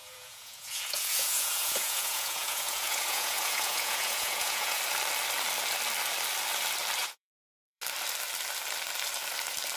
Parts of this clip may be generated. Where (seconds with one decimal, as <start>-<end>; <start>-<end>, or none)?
0.0-4.8; 7.0-7.8